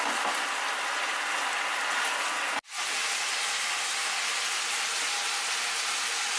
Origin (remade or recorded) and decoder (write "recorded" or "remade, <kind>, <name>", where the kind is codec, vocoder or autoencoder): recorded